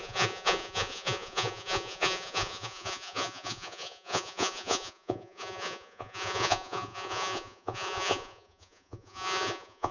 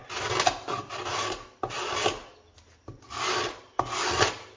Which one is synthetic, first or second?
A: first